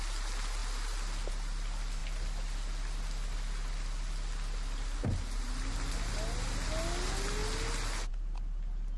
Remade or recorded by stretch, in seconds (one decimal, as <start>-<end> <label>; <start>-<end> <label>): 0.0-9.0 recorded